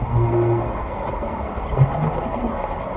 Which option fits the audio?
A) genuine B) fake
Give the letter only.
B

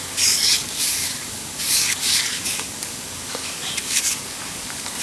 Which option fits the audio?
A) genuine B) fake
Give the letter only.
B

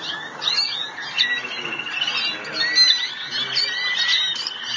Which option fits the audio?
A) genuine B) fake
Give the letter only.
A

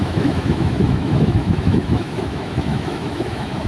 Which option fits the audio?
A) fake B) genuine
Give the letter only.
A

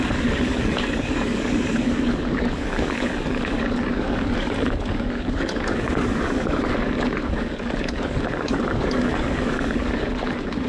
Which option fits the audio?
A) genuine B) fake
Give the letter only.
B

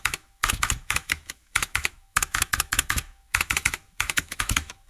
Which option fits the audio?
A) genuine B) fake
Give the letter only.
B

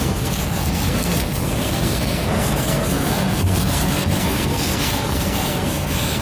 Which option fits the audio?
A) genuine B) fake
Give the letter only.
B